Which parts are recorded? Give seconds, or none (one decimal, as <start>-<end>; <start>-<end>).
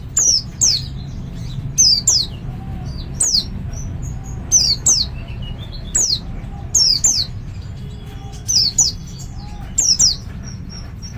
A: 0.0-11.2